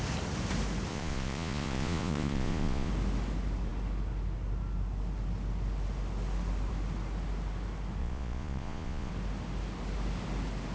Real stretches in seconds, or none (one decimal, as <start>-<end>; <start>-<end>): 0.0-0.9; 2.9-8.0; 9.1-10.7

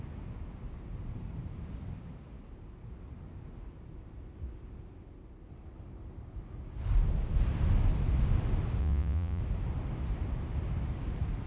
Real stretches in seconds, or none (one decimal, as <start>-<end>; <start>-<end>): 0.0-8.8; 9.4-11.5

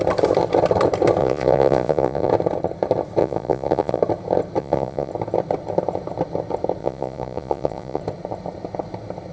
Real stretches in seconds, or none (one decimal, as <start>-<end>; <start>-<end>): 0.0-1.2; 2.3-3.2; 4.0-4.6; 5.1-6.8; 8.0-9.3